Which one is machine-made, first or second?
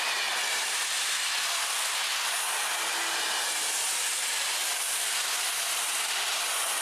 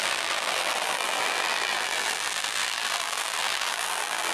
second